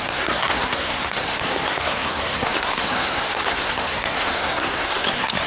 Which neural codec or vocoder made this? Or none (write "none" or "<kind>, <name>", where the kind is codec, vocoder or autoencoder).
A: codec, SNAC